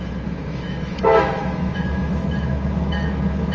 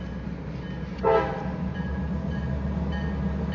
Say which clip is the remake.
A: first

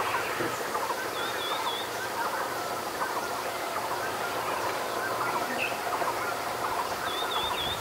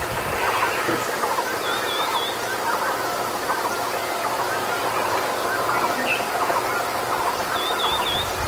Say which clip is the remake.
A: first